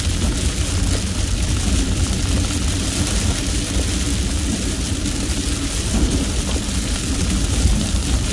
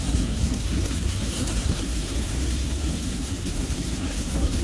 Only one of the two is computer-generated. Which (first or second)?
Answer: second